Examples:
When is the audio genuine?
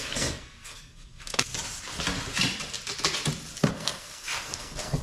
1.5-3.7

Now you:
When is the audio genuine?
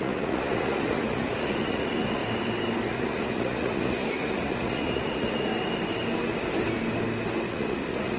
2.2-2.9; 5.5-7.5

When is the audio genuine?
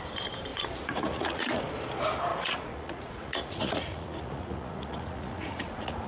0.0-0.5; 1.6-2.3